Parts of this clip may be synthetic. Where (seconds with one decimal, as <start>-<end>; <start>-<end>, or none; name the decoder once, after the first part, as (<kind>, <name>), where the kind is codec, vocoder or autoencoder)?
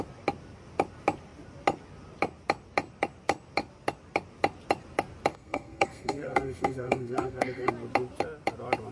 5.3-7.7 (codec, SNAC)